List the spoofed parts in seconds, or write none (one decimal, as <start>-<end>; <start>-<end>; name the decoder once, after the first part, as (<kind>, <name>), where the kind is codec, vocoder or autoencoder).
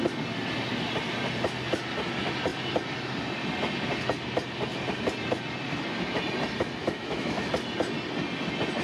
6.8-7.5 (autoencoder, DAC-VAE)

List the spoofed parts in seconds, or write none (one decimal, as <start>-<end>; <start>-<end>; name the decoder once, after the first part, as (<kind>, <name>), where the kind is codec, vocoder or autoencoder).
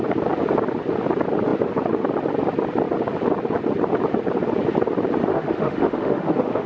5.3-6.7 (autoencoder, DAC-VAE)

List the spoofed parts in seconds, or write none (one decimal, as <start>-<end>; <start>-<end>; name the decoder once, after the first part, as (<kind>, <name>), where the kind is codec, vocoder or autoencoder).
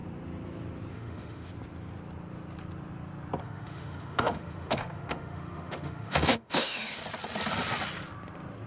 0.9-1.5 (autoencoder, DAC-VAE); 3.4-7.0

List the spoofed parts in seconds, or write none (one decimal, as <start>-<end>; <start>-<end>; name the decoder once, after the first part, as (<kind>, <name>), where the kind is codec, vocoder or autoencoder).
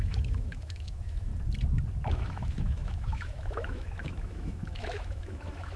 0.0-1.3 (autoencoder, DAC-VAE); 2.1-5.8